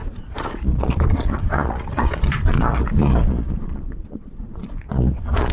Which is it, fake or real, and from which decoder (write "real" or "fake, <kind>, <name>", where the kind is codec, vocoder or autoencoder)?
fake, vocoder, Vocos